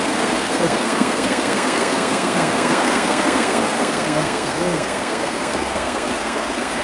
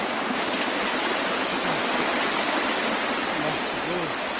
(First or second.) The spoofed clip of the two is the first